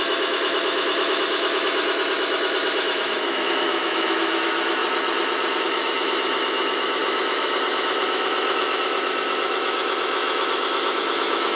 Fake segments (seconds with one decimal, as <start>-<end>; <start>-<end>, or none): 0.0-4.8; 5.6-11.6